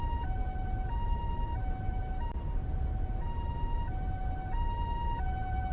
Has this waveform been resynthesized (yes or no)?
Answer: no